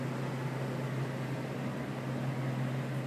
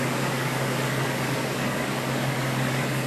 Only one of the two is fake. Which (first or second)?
second